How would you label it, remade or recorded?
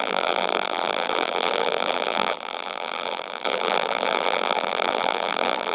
remade